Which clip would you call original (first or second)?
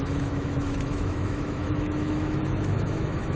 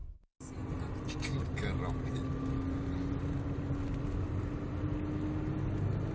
second